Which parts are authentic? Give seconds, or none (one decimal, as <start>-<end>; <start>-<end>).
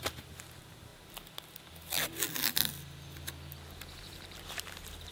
0.9-4.0